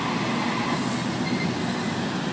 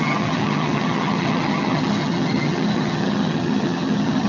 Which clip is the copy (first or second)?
second